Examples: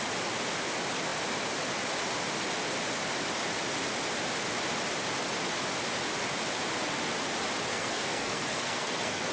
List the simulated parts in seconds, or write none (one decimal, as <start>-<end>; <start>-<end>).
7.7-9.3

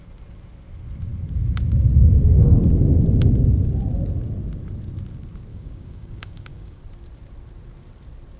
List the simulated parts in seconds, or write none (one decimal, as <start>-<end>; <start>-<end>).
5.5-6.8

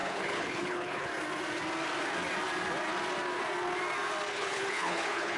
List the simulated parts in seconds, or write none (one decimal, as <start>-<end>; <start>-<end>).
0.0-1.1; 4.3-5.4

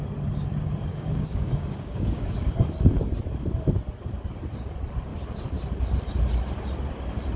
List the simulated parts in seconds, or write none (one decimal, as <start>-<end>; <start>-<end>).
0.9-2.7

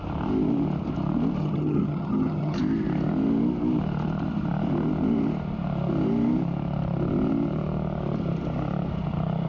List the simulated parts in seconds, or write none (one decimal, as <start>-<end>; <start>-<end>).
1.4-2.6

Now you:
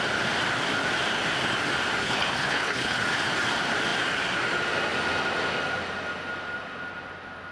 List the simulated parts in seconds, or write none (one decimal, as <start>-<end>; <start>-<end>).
2.0-3.0

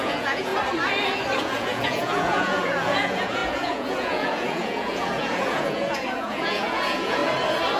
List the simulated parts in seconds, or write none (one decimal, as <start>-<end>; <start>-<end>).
0.0-0.5; 1.4-7.2